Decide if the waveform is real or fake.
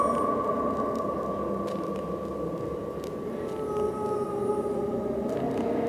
real